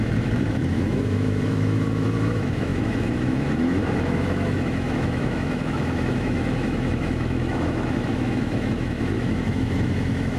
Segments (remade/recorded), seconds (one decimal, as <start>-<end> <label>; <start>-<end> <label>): 0.0-10.4 remade

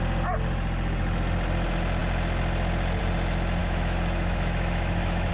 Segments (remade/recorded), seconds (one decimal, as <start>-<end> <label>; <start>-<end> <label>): 0.0-3.6 recorded; 3.6-5.3 remade

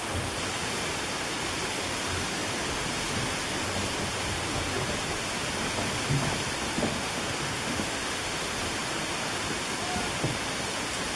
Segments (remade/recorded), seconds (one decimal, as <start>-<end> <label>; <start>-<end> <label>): 0.0-6.7 recorded; 6.7-8.5 remade; 8.5-11.2 recorded

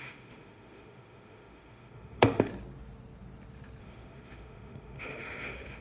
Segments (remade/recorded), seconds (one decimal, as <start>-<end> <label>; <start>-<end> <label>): 0.0-2.5 remade; 2.5-3.8 recorded; 3.8-5.8 remade

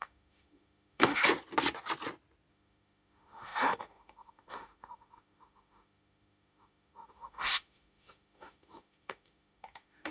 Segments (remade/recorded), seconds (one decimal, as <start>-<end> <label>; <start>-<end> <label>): 0.0-1.2 remade; 1.2-2.5 recorded; 2.5-10.1 remade

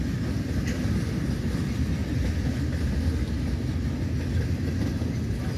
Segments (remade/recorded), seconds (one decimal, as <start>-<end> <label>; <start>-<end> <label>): 0.0-5.6 recorded

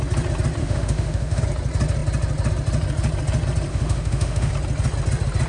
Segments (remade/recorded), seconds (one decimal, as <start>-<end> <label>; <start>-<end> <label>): 0.0-0.6 recorded; 0.6-1.4 remade; 1.4-3.7 recorded; 3.7-4.5 remade; 4.5-5.5 recorded

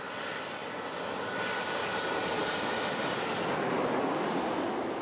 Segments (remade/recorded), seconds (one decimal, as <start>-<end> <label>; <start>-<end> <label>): 0.0-5.0 recorded